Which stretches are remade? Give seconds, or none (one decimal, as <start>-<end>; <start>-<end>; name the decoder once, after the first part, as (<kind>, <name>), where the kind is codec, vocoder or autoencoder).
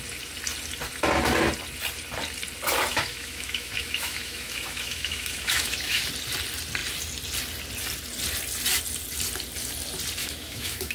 2.9-6.0 (autoencoder, DAC-VAE); 10.2-10.9